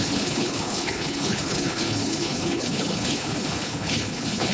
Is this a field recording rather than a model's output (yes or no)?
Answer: no